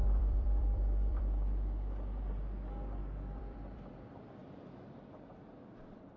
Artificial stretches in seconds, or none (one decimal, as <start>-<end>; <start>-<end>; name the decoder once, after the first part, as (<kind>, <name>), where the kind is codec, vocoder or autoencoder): 0.0-2.3 (vocoder, BigVGAN v2); 3.0-3.9